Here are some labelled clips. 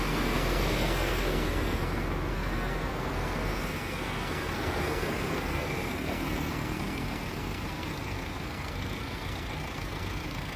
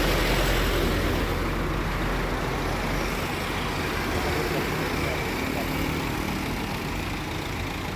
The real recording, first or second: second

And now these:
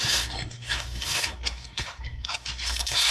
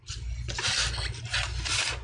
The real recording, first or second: second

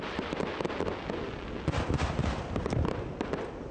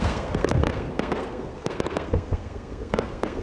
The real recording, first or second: first